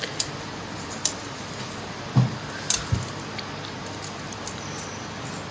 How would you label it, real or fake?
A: real